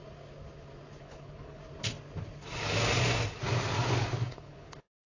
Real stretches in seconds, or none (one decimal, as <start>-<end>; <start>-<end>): 0.0-1.0; 1.6-4.3